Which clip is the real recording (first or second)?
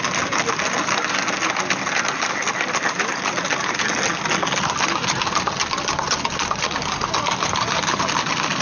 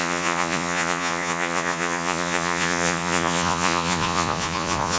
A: first